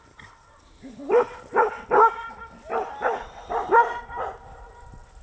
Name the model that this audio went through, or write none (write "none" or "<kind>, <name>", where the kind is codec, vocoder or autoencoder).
none